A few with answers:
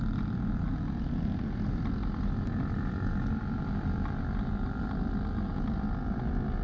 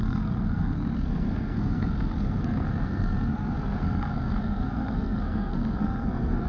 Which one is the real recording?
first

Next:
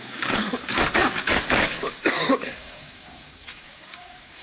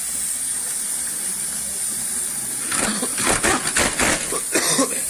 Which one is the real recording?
second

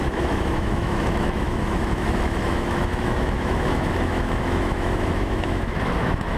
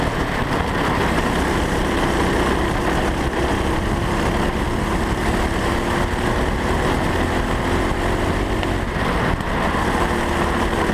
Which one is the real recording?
second